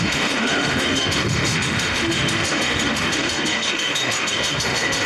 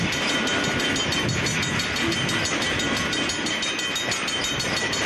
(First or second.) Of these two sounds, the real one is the second